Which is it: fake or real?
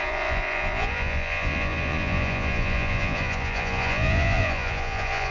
fake